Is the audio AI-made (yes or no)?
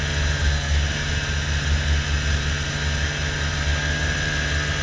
no